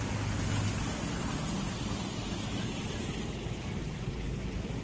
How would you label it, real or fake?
real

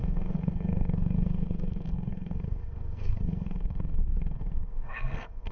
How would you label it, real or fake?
fake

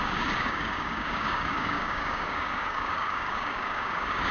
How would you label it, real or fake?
fake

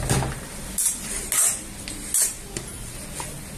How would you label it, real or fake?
real